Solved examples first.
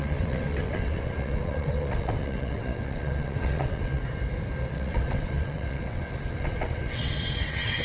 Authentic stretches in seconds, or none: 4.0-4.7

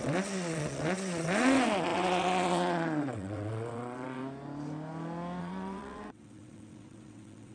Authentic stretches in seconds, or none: 4.2-5.4

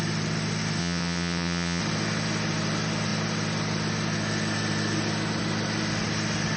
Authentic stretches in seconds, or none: 0.0-0.8; 1.8-6.6